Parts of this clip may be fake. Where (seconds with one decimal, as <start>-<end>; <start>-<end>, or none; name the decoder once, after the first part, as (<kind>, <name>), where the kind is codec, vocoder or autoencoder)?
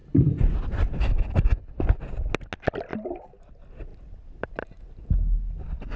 none